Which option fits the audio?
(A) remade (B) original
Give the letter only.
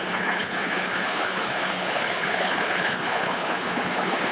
A